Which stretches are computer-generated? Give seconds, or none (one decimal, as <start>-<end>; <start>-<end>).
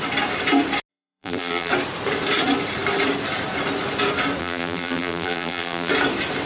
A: 0.9-1.7; 4.4-5.9